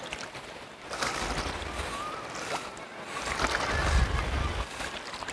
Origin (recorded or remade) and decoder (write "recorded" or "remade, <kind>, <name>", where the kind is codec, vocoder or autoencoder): recorded